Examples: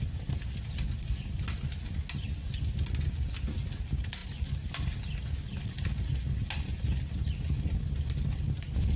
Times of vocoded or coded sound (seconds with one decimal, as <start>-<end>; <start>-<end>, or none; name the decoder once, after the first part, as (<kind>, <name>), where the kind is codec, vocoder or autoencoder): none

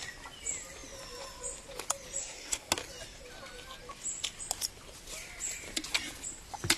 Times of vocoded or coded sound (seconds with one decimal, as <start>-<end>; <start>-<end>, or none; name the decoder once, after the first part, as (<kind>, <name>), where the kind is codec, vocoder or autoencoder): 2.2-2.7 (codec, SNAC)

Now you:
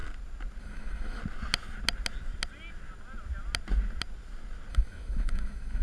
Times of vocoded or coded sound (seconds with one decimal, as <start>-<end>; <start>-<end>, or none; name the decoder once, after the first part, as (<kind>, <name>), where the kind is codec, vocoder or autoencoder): 0.6-1.2 (autoencoder, DAC-VAE); 4.7-5.8